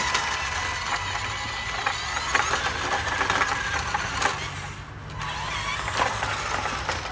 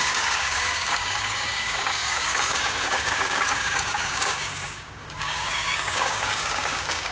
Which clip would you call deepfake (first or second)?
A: second